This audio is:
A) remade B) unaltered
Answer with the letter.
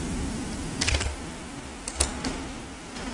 B